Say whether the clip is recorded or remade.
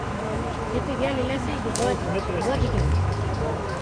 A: remade